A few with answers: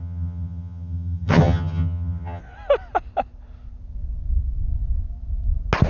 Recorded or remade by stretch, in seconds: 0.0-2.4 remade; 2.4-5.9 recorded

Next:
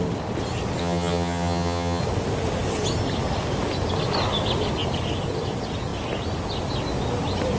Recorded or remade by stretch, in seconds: 0.0-0.8 recorded; 0.8-2.0 remade; 2.0-7.6 recorded